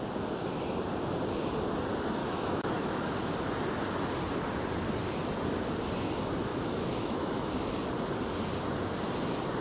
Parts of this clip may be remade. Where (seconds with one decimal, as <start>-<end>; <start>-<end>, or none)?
2.2-3.2; 6.5-7.5